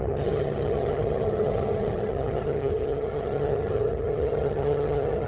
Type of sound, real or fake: fake